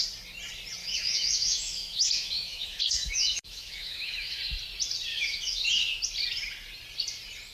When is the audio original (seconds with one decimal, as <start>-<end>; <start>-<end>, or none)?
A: 0.0-0.8; 4.4-5.1; 6.0-7.5